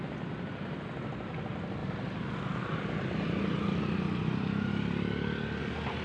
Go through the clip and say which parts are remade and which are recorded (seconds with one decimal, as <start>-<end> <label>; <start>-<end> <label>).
0.0-6.0 recorded